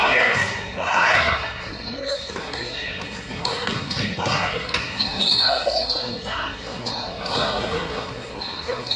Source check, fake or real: fake